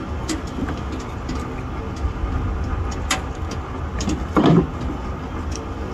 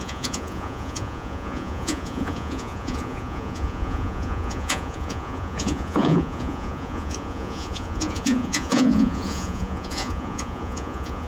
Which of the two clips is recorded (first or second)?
first